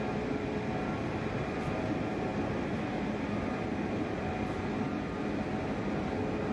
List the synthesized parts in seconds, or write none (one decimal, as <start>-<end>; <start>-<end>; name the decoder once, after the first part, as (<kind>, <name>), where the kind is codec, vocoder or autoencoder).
none